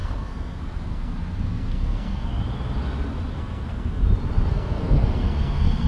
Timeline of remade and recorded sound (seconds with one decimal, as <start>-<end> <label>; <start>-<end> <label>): 0.0-2.3 remade; 2.3-3.3 recorded; 3.3-4.0 remade; 4.0-4.5 recorded; 4.5-5.9 remade